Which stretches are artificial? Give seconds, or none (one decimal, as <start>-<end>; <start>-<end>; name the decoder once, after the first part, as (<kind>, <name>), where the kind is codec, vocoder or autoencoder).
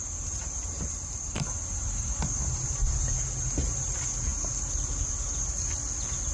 none